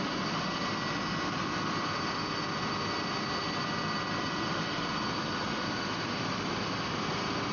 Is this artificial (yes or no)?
no